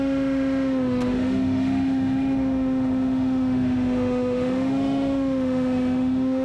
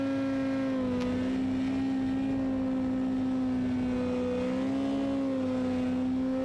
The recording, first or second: second